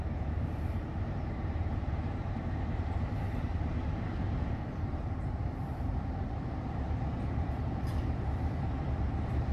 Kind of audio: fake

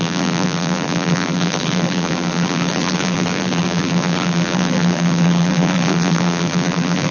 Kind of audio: fake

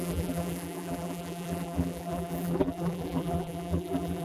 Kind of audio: fake